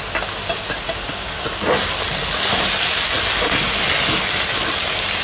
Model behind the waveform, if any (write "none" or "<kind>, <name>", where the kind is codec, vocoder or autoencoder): none